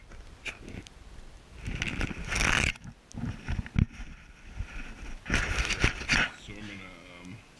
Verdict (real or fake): real